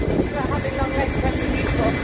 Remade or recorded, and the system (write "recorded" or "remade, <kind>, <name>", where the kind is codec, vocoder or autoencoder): recorded